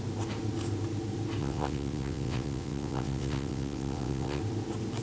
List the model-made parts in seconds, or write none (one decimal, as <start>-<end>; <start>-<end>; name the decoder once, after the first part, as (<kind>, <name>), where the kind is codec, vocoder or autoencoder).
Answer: 1.4-4.4 (vocoder, WaveNeXt)